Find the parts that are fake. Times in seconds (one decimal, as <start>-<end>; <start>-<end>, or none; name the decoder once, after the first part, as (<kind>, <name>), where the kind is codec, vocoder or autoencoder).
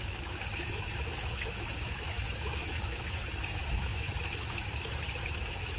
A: 0.0-5.8 (autoencoder, DAC-VAE)